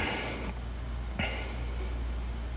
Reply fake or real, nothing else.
real